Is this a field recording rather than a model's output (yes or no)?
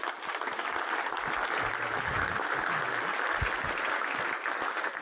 yes